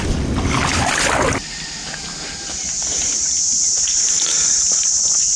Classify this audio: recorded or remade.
recorded